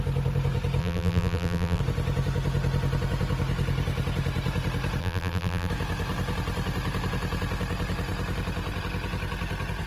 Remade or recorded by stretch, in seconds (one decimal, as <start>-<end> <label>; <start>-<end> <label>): 0.0-0.8 recorded; 0.8-1.8 remade; 1.8-5.0 recorded; 5.0-5.7 remade; 5.7-9.9 recorded